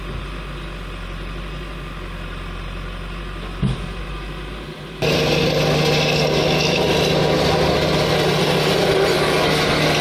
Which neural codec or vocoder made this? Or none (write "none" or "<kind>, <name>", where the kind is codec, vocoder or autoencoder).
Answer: none